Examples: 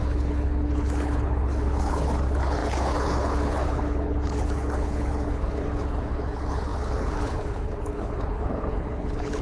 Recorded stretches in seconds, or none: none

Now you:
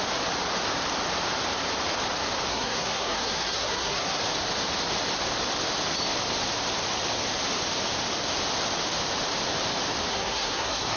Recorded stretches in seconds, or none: 0.0-2.5; 4.2-10.1

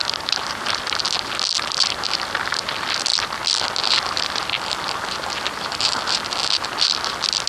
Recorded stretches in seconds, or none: 0.0-7.5

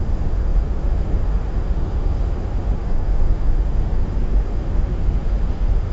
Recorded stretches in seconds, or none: none